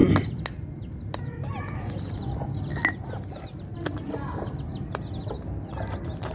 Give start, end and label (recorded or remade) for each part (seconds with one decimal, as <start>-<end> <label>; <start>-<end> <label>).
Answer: 0.0-6.3 recorded